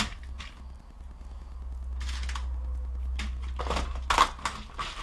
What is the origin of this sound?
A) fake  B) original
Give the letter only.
B